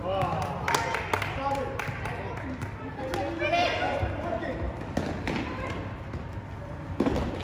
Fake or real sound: real